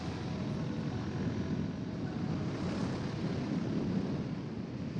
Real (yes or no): yes